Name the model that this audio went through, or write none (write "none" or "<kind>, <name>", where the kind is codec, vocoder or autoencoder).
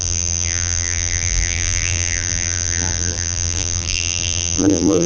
vocoder, BigVGAN v2